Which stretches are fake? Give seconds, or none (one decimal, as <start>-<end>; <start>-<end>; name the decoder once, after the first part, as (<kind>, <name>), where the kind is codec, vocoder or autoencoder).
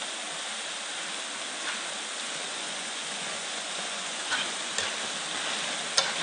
2.5-4.7 (vocoder, Vocos)